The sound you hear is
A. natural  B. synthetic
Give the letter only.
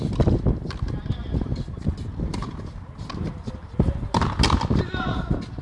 A